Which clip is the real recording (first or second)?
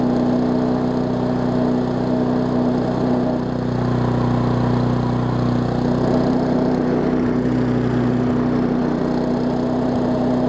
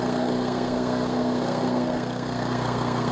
first